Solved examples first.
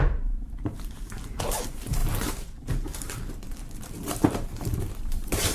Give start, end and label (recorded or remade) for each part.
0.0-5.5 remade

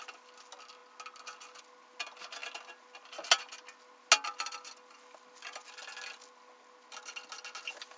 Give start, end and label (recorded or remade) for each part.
0.0-8.0 recorded

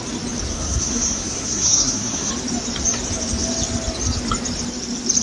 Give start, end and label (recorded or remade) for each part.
0.0-0.5 recorded; 0.5-2.3 remade; 2.3-5.2 recorded

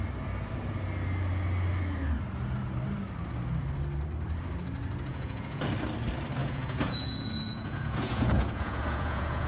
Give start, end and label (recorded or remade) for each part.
0.0-5.1 recorded; 5.1-5.6 remade; 5.6-6.4 recorded; 6.4-9.5 remade

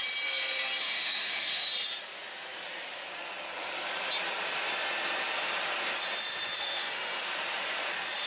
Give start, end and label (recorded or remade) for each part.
0.0-0.8 recorded; 0.8-1.7 remade; 1.7-6.6 recorded; 6.6-7.2 remade; 7.2-8.3 recorded

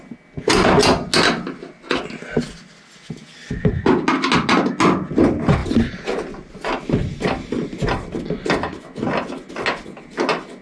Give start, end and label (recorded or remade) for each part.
0.0-10.6 recorded

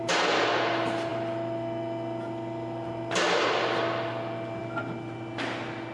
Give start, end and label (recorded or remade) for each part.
0.0-5.9 recorded